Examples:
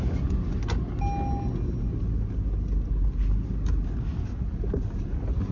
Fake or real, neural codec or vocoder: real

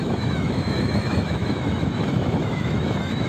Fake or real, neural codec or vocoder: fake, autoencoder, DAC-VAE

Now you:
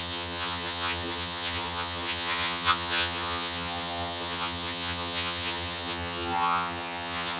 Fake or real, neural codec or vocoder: fake, vocoder, HiFi-GAN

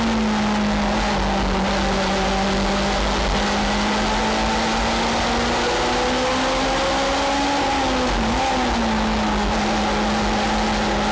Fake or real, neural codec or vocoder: real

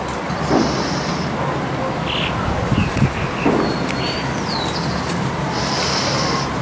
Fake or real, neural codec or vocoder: real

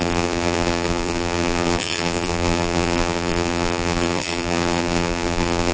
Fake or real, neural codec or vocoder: fake, vocoder, BigVGAN v2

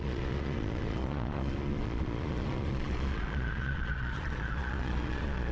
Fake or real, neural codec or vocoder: fake, vocoder, Vocos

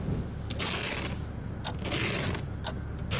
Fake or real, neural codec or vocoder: real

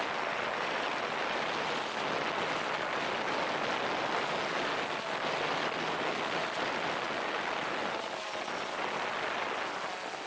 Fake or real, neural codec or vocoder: real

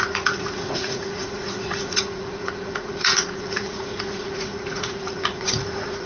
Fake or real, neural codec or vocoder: fake, vocoder, Vocos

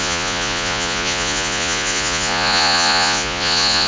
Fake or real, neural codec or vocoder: fake, vocoder, Vocos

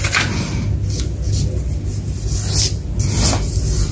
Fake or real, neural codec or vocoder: real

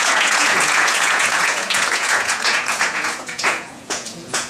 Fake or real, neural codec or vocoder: fake, vocoder, Vocos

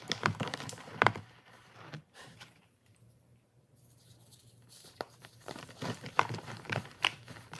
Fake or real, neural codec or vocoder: fake, vocoder, BigVGAN v2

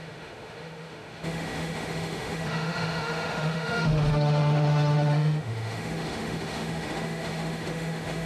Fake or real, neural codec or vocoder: fake, autoencoder, DAC-VAE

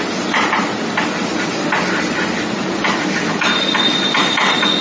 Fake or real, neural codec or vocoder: real